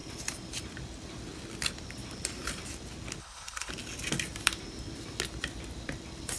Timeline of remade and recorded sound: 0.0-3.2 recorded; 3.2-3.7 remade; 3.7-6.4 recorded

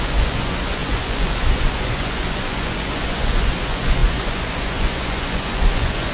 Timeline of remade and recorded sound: 0.0-6.1 remade